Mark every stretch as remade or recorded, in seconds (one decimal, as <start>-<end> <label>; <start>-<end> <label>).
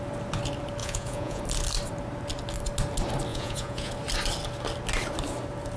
0.0-0.8 recorded; 0.8-1.4 remade; 1.4-3.3 recorded; 3.3-3.9 remade; 3.9-5.8 recorded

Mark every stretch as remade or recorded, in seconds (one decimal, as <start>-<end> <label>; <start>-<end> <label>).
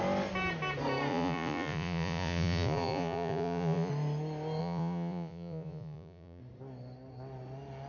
0.0-1.1 recorded; 1.1-3.9 remade; 3.9-4.6 recorded; 4.6-6.4 remade; 6.4-7.9 recorded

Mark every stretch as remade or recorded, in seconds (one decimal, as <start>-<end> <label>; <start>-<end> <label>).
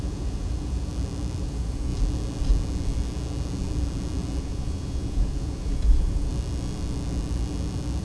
0.0-0.9 remade; 0.9-1.4 recorded; 1.4-1.9 remade; 1.9-4.4 recorded; 4.4-6.3 remade; 6.3-8.0 recorded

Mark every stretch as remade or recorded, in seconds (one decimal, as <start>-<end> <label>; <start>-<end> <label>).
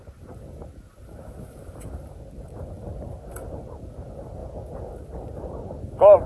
0.0-4.4 recorded; 4.4-4.9 remade; 4.9-6.3 recorded